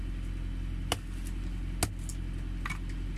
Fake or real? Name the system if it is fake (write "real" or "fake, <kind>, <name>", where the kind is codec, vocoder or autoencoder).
real